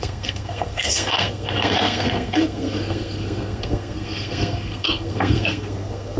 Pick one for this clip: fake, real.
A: fake